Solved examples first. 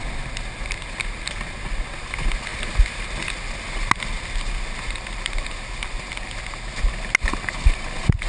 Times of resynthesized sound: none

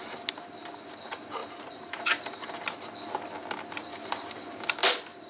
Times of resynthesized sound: 1.4-2.4; 3.9-4.7

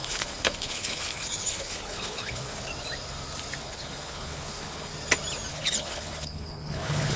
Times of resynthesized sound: 0.0-2.7; 3.6-4.9; 5.5-7.2

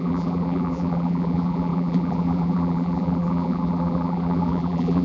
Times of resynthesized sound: 0.0-5.0

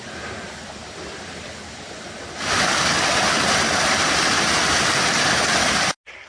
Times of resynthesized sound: none

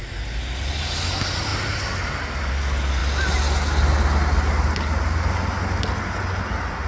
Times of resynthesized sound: none

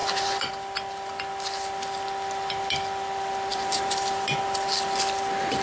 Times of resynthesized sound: 0.0-0.5; 3.5-4.4

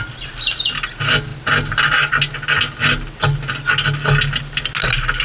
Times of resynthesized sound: none